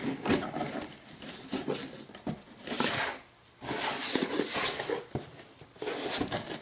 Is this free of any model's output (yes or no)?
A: yes